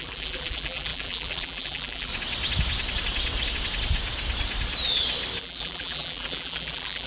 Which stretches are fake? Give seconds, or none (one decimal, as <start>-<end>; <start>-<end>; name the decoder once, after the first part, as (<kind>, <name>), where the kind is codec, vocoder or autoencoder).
0.0-2.1 (vocoder, BigVGAN v2); 5.4-7.1